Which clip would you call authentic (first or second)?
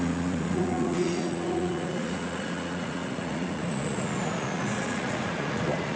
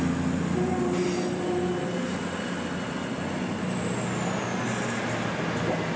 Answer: second